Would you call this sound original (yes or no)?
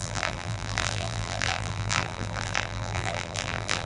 no